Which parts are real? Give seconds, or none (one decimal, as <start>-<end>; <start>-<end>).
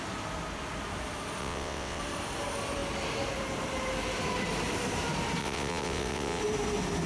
0.0-1.4; 2.0-5.4; 6.4-7.1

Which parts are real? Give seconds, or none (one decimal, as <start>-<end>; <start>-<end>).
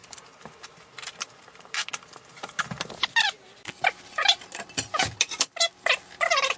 0.0-6.6